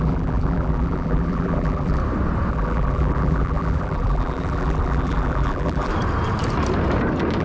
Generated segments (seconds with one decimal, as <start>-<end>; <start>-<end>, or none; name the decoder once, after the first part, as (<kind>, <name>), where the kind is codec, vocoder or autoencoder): 0.0-2.0 (vocoder, BigVGAN v2); 2.5-5.9